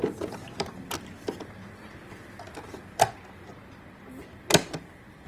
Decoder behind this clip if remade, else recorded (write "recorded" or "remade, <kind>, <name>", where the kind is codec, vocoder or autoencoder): recorded